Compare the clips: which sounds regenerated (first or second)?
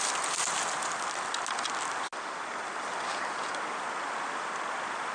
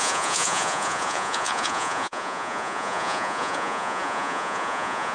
second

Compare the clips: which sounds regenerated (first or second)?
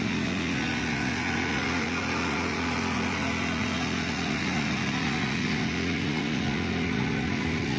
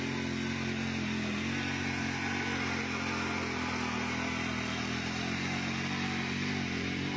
first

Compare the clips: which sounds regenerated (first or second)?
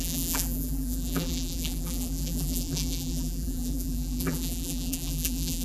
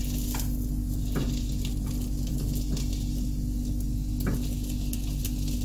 first